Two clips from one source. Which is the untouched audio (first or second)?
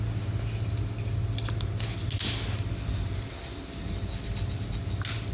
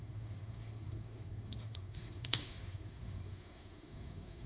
first